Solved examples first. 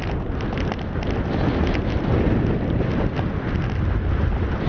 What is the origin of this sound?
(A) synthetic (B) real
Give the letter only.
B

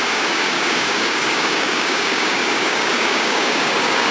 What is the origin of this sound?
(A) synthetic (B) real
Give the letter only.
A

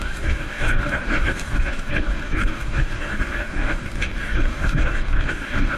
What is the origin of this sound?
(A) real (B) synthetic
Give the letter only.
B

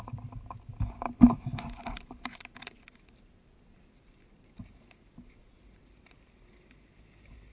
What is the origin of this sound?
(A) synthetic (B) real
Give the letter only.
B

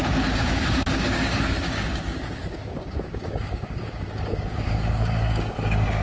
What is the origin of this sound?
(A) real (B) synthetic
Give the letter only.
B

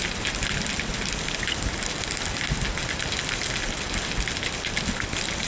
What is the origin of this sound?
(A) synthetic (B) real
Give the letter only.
B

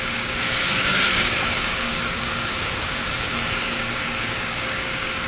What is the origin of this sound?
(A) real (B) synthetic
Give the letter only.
B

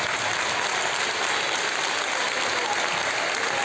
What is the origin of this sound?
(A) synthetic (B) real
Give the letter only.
B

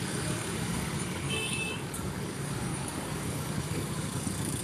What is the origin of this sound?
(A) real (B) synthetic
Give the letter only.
B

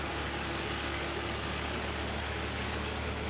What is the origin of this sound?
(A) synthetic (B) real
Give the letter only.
A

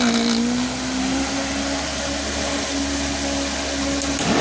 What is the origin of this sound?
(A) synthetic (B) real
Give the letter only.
B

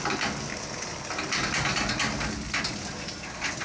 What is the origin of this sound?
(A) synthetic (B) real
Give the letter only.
B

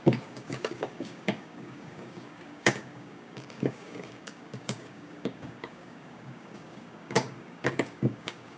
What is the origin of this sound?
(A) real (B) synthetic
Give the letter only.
B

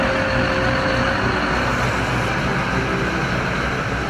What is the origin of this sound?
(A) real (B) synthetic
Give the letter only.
A